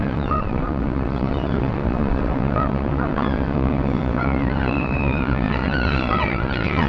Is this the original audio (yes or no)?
no